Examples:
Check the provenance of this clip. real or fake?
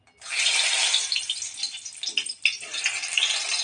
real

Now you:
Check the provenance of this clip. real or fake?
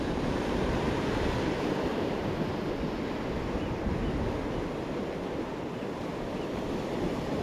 real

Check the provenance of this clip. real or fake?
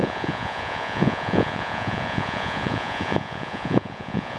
fake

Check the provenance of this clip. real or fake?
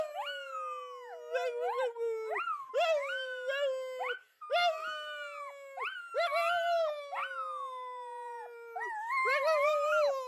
real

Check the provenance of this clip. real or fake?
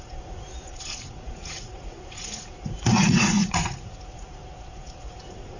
fake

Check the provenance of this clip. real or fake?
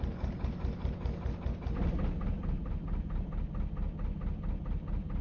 real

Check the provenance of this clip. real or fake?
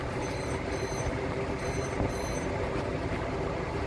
fake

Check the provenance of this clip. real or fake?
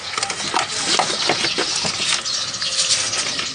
real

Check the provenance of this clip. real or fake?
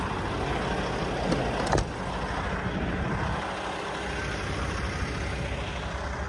real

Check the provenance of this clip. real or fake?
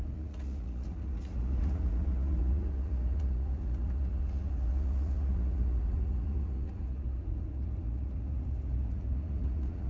fake